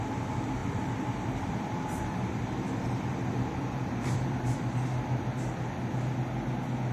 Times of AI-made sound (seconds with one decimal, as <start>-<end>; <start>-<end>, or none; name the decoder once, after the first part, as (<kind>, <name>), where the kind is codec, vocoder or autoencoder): 0.6-4.7 (vocoder, BigVGAN v2)